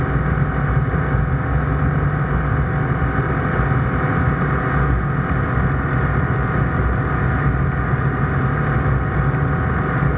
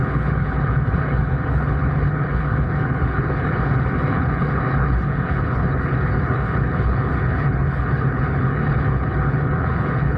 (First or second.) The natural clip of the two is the first